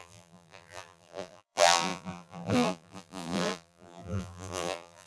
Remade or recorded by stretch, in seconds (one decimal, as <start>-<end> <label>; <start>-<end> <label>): 0.0-5.1 remade